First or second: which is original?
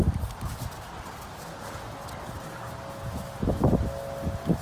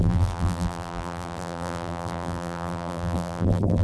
first